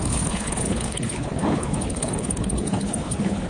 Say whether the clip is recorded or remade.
remade